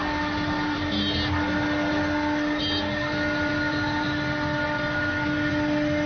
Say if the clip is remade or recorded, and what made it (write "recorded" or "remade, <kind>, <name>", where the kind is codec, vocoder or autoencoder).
recorded